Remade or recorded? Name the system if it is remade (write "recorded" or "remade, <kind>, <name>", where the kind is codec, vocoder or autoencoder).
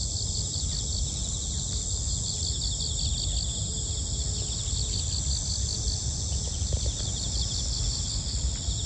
recorded